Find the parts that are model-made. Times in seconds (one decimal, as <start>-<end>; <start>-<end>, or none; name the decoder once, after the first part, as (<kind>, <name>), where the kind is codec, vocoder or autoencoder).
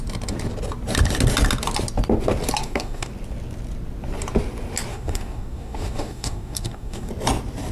2.6-3.1 (codec, DAC); 4.9-7.1